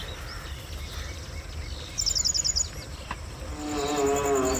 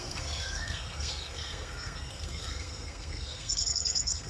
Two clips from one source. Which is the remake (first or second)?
second